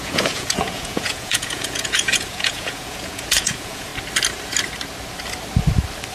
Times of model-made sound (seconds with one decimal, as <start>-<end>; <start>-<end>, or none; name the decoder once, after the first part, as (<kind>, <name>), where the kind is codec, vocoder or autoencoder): 0.0-3.9 (vocoder, Vocos)